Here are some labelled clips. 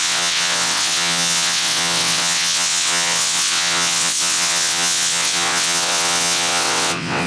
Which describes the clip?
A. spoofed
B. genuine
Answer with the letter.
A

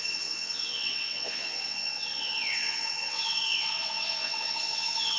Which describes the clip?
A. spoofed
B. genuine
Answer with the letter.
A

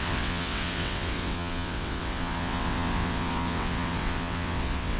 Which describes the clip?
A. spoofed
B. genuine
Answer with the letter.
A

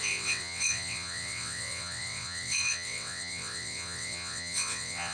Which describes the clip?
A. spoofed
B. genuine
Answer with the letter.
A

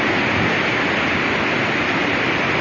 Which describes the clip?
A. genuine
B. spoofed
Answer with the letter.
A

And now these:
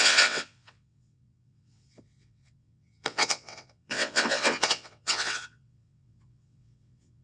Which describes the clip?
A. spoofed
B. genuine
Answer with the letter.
A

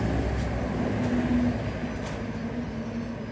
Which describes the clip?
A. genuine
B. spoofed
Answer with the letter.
A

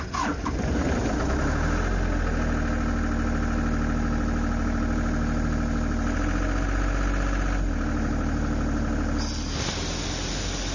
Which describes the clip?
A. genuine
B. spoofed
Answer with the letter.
A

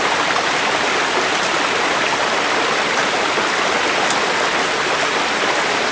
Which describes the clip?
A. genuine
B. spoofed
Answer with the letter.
A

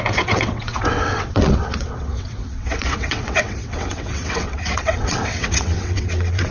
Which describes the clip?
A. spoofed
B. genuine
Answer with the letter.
A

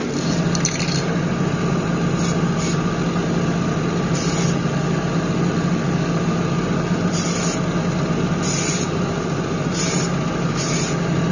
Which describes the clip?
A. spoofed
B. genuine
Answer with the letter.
B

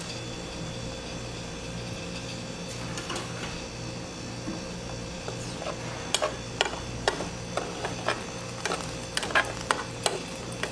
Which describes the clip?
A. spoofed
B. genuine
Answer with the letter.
B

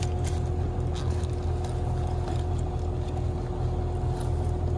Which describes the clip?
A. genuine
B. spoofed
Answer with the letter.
A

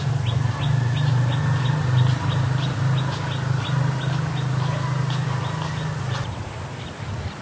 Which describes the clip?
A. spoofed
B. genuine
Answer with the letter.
B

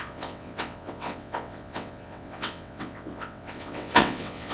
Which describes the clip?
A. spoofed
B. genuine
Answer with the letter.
A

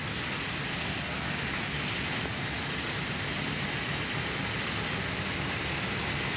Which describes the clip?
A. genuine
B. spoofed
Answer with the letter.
A